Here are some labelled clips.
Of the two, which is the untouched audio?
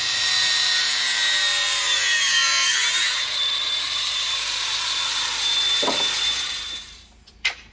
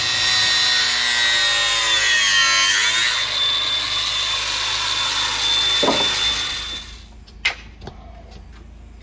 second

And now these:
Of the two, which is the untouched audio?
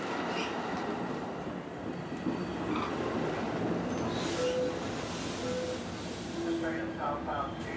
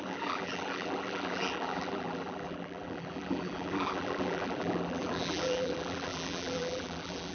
first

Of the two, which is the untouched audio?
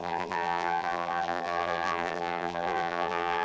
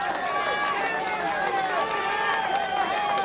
second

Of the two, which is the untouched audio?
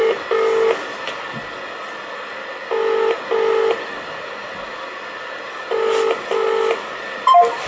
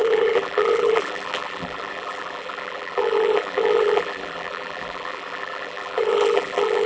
first